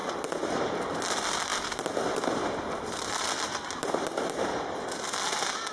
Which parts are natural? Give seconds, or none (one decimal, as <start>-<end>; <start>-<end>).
0.0-5.7

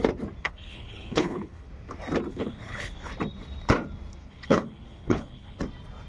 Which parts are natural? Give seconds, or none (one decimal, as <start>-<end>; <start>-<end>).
0.0-0.4; 1.7-2.3; 3.1-4.2; 5.6-6.1

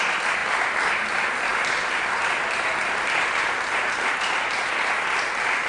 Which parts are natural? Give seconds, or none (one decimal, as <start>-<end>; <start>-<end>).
0.0-5.7

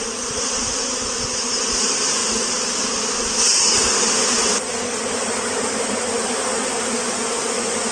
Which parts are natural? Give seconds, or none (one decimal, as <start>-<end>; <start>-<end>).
0.0-7.9

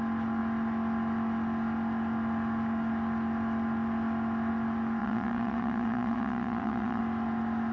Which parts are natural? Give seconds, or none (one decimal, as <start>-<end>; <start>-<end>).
0.0-5.0; 7.0-7.7

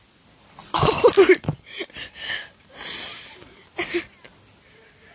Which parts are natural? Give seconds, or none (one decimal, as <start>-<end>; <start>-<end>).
0.0-0.6; 3.7-5.1

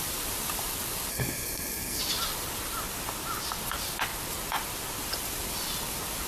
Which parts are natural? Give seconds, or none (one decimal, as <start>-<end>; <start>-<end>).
0.0-1.1; 2.0-6.3